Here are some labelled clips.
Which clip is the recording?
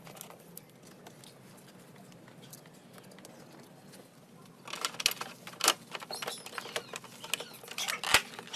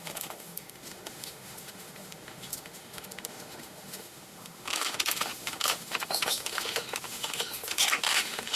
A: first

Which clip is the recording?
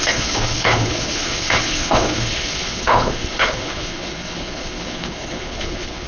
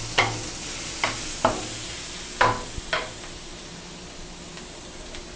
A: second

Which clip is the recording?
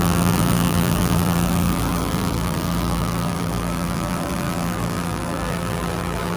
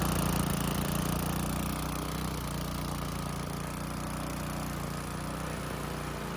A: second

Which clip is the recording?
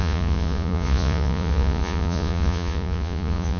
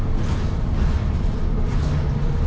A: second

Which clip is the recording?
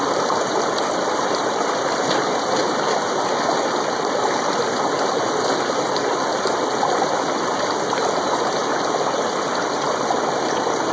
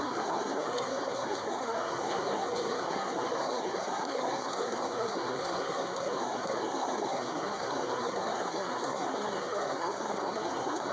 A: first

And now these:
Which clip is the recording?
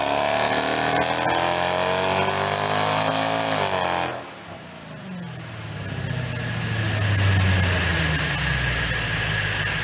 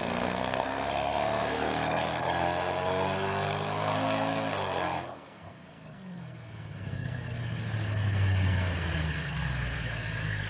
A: first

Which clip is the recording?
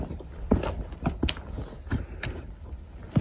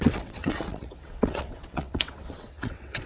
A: first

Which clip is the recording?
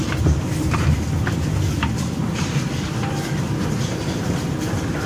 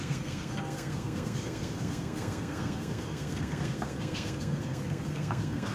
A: first